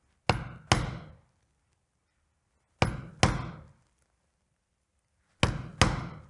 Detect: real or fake real